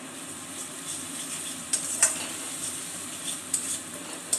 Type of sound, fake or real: fake